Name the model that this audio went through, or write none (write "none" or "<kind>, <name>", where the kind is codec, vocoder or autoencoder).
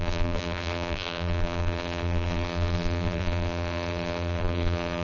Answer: vocoder, BigVGAN v2